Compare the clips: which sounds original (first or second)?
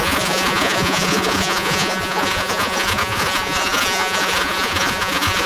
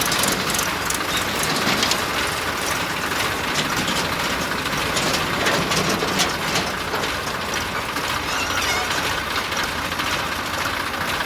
second